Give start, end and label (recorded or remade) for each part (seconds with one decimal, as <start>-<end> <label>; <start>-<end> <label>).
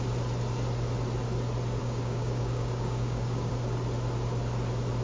0.0-1.8 recorded; 1.8-3.5 remade; 3.5-5.0 recorded